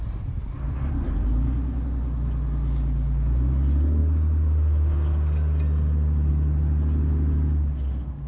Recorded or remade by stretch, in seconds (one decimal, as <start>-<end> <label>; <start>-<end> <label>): 0.0-8.3 recorded